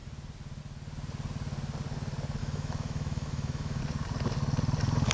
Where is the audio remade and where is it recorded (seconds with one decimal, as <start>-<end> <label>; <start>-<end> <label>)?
0.0-2.4 recorded; 2.4-3.8 remade; 3.8-5.1 recorded